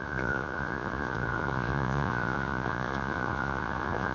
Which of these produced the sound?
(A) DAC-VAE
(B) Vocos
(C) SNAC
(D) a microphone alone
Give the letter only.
B